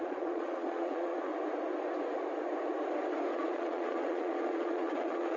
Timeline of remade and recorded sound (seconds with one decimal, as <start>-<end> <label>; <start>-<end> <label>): 0.0-1.3 remade; 1.3-3.3 recorded; 3.3-5.4 remade